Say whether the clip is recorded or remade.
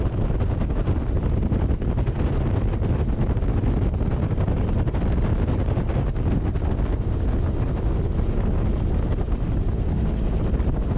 recorded